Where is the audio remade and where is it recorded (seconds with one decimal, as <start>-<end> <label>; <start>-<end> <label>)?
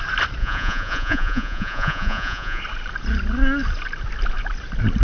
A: 0.0-0.4 recorded; 0.4-2.6 remade; 2.6-5.0 recorded